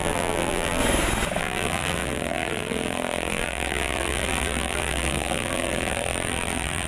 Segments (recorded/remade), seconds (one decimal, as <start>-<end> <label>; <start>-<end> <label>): 0.0-0.8 remade; 0.8-1.4 recorded; 1.4-6.9 remade